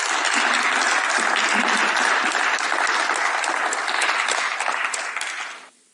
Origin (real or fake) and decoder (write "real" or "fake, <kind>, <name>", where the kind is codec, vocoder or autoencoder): real